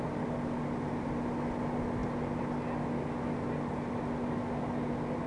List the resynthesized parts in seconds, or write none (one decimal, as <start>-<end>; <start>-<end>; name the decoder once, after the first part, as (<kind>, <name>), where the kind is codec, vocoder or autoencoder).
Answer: none